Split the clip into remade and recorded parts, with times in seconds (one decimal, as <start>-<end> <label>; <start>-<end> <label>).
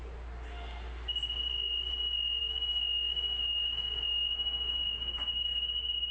0.0-2.4 recorded; 2.4-6.1 remade